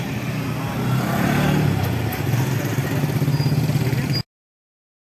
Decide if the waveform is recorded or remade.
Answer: recorded